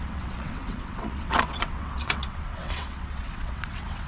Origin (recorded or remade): remade